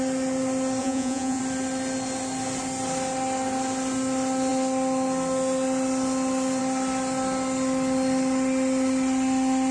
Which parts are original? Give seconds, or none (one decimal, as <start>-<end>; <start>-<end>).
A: 0.0-0.8; 1.4-9.7